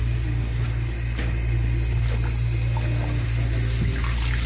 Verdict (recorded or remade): recorded